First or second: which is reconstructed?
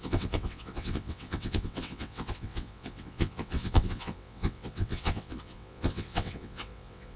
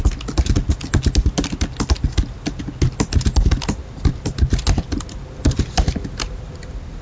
first